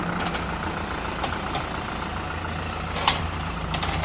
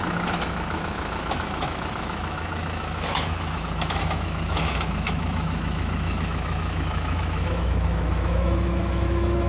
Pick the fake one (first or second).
second